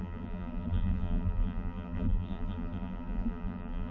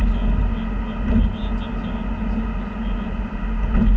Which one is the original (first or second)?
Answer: second